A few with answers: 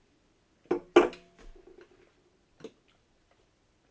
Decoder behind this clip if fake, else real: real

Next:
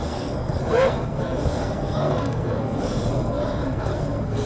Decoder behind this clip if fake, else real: fake, codec, SNAC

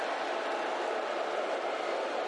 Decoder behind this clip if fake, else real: real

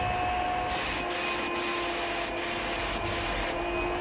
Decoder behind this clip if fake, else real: real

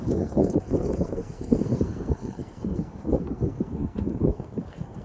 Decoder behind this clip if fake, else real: fake, codec, SNAC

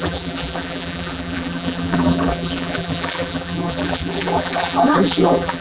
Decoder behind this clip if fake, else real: fake, vocoder, BigVGAN v2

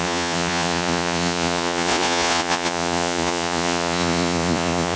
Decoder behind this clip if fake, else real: fake, vocoder, Vocos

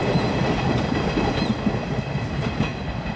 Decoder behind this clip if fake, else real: real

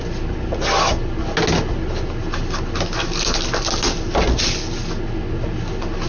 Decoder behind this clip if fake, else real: real